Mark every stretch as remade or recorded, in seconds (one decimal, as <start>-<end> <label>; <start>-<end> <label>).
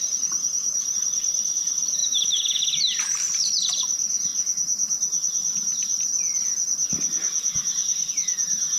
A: 0.0-2.0 recorded; 2.0-2.6 remade; 2.6-8.8 recorded